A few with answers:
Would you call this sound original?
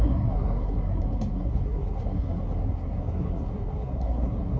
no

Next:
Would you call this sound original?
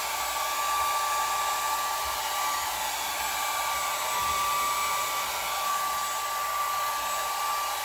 yes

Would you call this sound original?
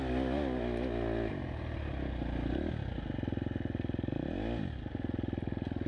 yes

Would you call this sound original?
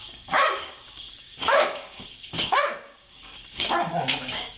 no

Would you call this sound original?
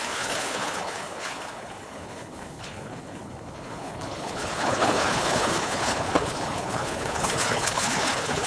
no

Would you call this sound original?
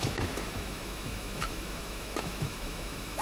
no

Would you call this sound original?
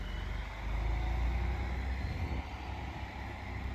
yes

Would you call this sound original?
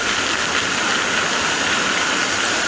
yes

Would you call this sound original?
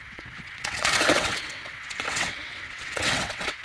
no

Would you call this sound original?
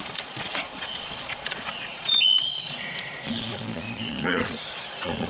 no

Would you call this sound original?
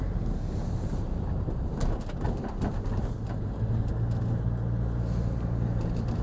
yes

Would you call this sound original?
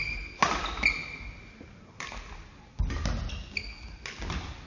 yes